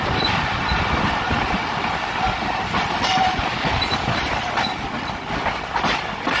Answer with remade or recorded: recorded